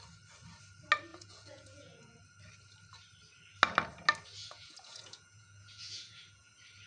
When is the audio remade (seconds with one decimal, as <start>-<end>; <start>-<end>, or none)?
1.1-2.2; 4.4-6.5